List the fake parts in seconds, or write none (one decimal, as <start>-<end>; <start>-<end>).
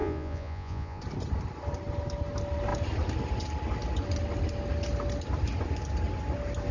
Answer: 0.0-1.0